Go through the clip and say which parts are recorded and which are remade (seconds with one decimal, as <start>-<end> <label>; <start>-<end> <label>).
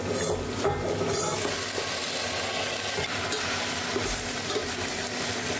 0.0-5.6 recorded